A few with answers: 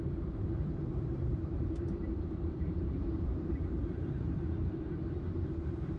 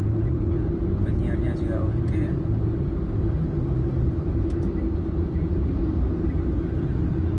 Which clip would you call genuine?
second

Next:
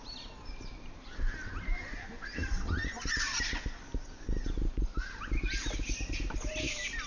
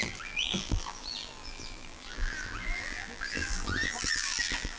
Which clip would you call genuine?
first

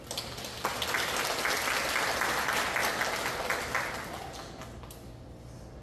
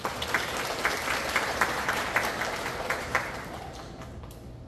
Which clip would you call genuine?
first